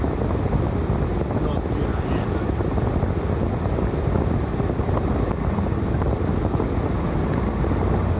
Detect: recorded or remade recorded